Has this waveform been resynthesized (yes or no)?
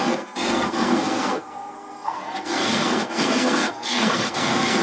yes